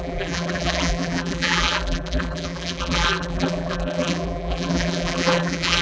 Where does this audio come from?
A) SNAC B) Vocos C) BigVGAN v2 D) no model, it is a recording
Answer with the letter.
C